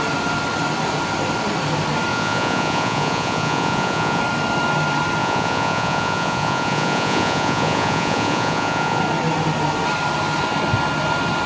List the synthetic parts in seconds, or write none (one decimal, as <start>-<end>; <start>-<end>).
2.1-4.2; 5.2-9.0